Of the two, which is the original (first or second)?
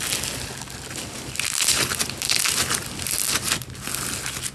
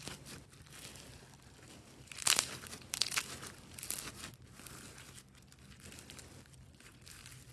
first